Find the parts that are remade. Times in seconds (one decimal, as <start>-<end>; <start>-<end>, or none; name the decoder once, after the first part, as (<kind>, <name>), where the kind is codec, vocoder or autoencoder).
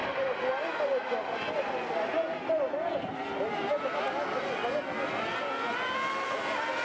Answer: none